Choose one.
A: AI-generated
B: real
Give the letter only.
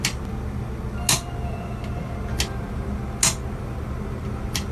B